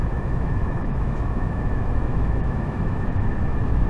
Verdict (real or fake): fake